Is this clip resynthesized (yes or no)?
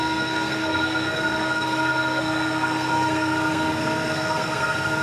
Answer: yes